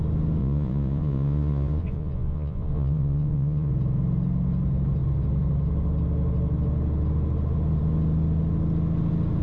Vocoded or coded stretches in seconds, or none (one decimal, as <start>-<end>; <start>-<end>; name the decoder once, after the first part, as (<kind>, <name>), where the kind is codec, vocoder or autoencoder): 0.4-3.7 (vocoder, Vocos)